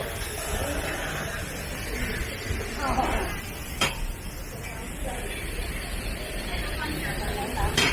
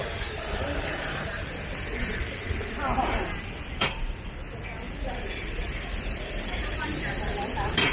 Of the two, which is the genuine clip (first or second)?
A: first